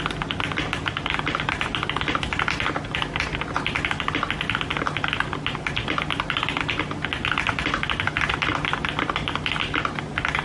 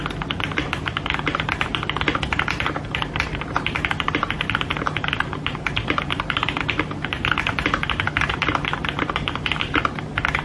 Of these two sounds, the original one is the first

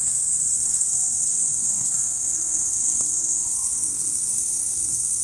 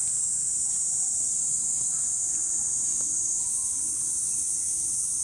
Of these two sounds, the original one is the second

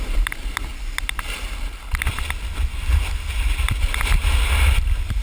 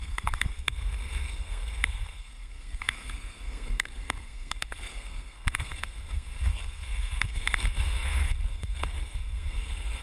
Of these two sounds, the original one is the first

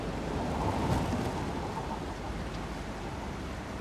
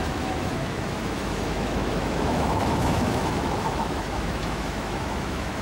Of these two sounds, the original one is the first